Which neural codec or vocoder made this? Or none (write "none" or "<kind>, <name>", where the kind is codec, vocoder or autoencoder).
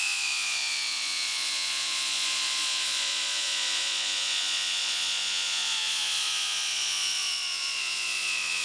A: vocoder, Vocos